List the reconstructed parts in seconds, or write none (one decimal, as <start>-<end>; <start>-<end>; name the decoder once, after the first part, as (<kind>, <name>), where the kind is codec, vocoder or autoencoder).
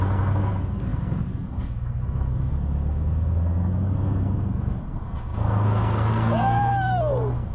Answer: 0.0-7.5 (codec, SNAC)